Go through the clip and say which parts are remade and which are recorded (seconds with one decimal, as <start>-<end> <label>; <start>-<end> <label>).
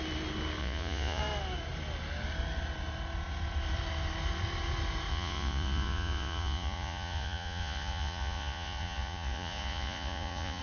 0.0-0.6 recorded; 0.6-1.2 remade; 1.2-5.1 recorded; 5.1-10.6 remade